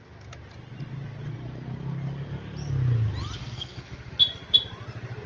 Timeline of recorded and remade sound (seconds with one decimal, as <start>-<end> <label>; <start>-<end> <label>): 0.0-3.4 recorded; 3.4-4.1 remade; 4.1-5.3 recorded